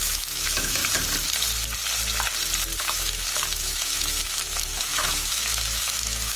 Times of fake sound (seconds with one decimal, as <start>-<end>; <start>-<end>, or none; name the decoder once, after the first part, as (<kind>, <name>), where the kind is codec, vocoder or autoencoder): 0.0-0.8 (autoencoder, DAC-VAE); 2.8-6.4